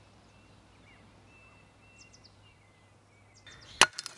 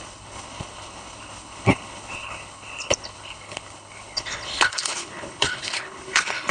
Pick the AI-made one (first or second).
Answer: second